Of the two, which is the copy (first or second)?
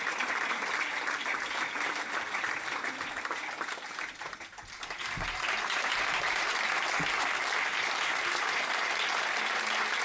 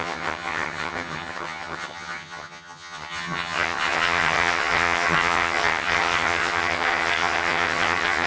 second